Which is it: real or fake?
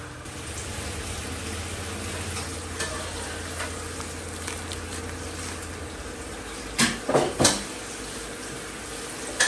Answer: real